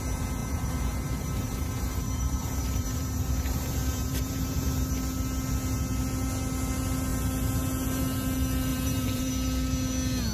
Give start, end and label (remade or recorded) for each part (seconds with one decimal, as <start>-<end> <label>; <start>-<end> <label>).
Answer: 0.0-0.4 recorded; 0.4-4.9 remade; 4.9-8.7 recorded; 8.7-9.3 remade; 9.3-10.3 recorded

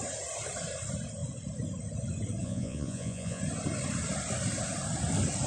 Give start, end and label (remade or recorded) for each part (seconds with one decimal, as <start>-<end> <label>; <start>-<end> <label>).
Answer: 0.0-2.4 recorded; 2.4-3.4 remade; 3.4-5.5 recorded